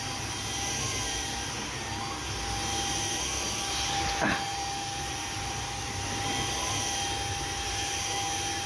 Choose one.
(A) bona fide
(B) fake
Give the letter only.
A